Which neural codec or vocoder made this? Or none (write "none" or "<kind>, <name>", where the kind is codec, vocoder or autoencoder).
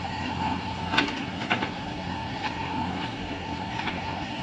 codec, SNAC